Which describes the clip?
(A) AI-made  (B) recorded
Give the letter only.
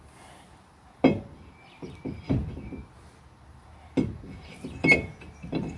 B